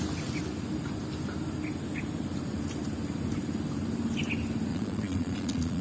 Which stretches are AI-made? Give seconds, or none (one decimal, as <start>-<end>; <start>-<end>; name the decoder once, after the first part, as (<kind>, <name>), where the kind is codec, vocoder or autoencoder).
4.7-5.8 (vocoder, Vocos)